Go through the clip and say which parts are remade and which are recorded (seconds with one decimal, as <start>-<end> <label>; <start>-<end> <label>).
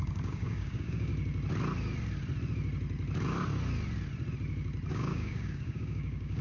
0.0-1.1 remade; 1.1-4.9 recorded; 4.9-6.4 remade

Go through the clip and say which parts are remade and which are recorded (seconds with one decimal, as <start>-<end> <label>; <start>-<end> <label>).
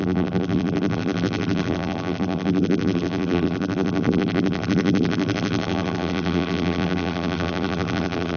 0.0-8.4 remade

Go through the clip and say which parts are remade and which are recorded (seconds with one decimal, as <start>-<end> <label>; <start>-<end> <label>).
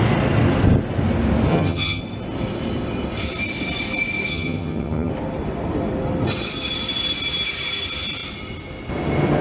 0.0-1.5 recorded; 1.5-2.0 remade; 2.0-4.3 recorded; 4.3-5.1 remade; 5.1-9.4 recorded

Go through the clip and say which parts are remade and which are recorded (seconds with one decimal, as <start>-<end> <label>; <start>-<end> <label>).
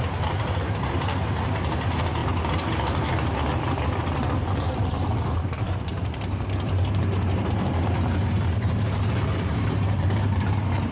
0.0-2.2 remade; 2.2-4.4 recorded; 4.4-10.9 remade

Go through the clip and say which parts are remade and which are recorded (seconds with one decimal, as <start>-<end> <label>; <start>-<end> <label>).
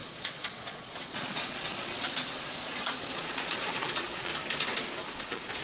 0.0-4.3 remade; 4.3-5.1 recorded; 5.1-5.6 remade